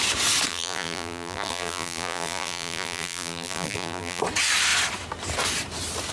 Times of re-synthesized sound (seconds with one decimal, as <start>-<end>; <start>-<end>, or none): 0.5-4.2